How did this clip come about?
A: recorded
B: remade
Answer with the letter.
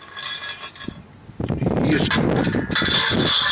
A